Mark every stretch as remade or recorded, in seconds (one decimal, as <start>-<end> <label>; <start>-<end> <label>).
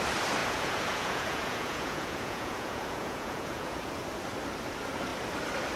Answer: 0.0-0.4 recorded; 0.4-3.9 remade; 3.9-5.8 recorded